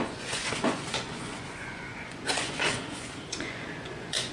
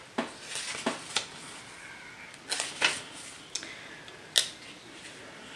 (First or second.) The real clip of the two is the second